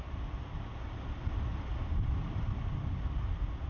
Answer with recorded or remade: recorded